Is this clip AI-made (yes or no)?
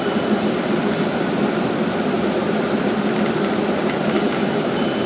no